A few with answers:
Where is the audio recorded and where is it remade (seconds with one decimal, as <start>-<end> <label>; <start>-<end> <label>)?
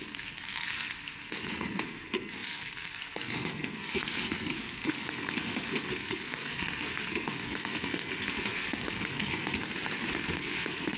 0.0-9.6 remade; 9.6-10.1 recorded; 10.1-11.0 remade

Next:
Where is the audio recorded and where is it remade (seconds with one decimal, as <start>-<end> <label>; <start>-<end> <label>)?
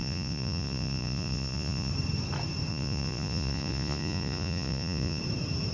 0.0-1.9 remade; 1.9-2.7 recorded; 2.7-5.2 remade; 5.2-5.7 recorded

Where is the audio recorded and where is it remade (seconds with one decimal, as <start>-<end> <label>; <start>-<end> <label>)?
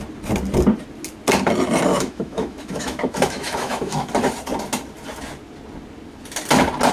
0.0-1.9 recorded; 1.9-4.1 remade; 4.1-6.9 recorded